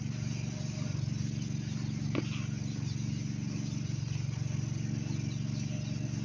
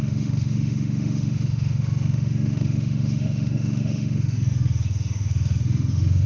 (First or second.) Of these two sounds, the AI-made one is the second